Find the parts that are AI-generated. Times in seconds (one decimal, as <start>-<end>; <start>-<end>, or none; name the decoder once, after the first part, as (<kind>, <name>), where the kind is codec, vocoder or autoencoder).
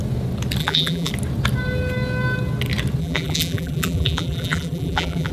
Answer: 0.6-1.1 (vocoder, BigVGAN v2); 3.0-5.3